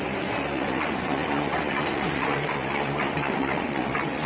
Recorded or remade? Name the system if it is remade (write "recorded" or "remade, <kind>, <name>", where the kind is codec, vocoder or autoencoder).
remade, vocoder, Vocos